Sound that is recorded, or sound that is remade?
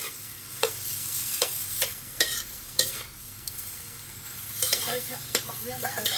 remade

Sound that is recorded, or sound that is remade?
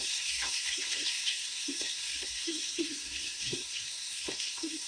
remade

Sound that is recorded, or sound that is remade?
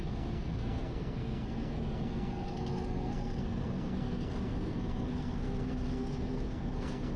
remade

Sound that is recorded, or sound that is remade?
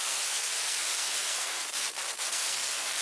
remade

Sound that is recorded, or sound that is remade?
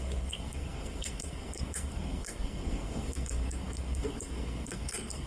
remade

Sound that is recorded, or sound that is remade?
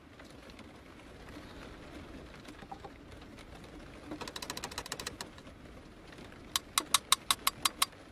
recorded